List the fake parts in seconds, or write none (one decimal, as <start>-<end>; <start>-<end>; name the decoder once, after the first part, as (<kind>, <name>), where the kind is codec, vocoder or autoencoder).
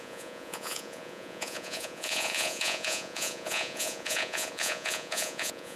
0.0-5.8 (vocoder, Vocos)